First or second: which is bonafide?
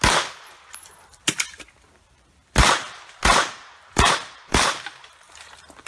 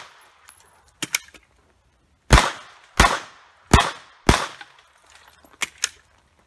second